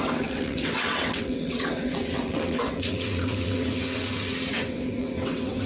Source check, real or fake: fake